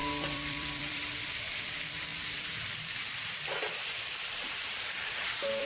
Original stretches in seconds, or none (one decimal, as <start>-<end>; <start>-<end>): none